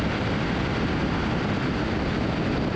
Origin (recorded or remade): recorded